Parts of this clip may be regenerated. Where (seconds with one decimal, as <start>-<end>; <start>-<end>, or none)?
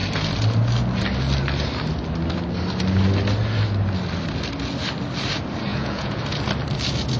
5.7-6.2